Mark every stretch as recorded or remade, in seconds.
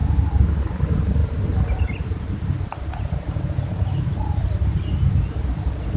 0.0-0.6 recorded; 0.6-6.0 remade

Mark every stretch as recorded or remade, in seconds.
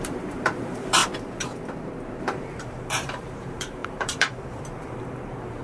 0.0-1.0 remade; 1.0-2.2 recorded; 2.2-5.6 remade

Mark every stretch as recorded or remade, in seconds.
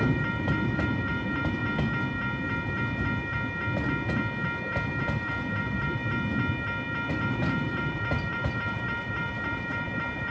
0.0-1.6 remade; 1.6-5.6 recorded; 5.6-6.0 remade; 6.0-7.1 recorded; 7.1-10.3 remade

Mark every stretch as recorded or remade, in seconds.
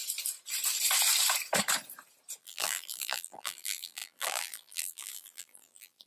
0.0-2.4 recorded; 2.4-6.1 remade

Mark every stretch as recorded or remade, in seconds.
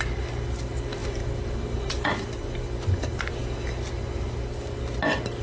0.0-1.0 recorded; 1.0-1.9 remade; 1.9-5.4 recorded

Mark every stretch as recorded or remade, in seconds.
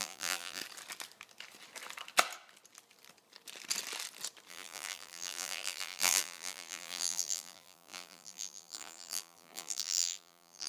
0.0-0.6 remade; 0.6-4.5 recorded; 4.5-10.7 remade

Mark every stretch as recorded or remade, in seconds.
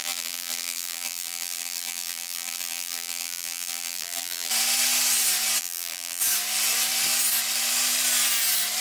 0.0-4.5 remade; 4.5-5.6 recorded; 5.6-6.2 remade; 6.2-8.8 recorded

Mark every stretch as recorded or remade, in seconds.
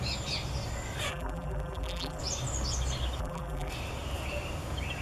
0.0-1.1 recorded; 1.1-2.2 remade; 2.2-3.2 recorded; 3.2-3.7 remade; 3.7-5.0 recorded